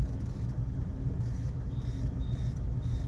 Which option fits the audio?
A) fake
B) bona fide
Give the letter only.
A